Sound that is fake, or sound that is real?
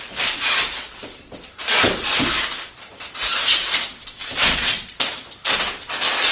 real